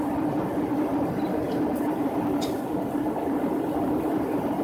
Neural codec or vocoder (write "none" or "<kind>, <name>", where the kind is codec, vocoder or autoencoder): none